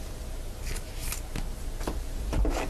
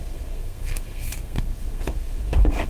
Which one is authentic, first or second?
first